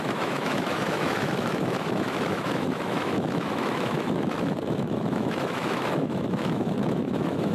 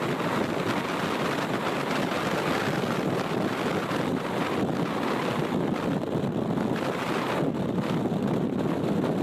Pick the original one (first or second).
second